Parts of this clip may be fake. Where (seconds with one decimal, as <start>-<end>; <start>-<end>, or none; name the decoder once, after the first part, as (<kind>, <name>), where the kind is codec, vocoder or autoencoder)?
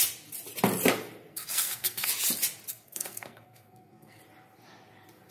1.3-2.1 (codec, SNAC); 2.7-4.2